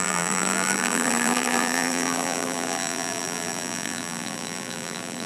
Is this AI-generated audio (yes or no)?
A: yes